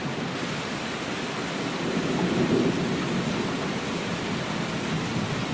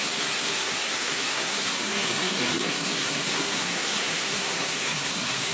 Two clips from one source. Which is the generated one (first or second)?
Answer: second